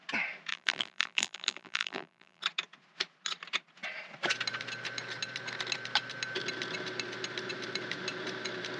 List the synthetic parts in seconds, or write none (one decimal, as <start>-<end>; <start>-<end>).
0.5-2.4

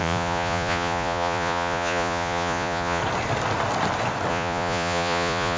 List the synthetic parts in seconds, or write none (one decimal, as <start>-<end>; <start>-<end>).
0.0-3.0; 4.3-5.6

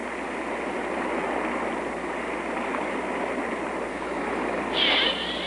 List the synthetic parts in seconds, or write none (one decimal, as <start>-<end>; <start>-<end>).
3.9-4.6

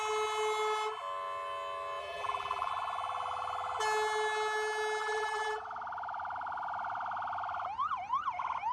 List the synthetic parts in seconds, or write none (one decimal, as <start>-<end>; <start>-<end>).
2.0-2.7; 5.0-5.6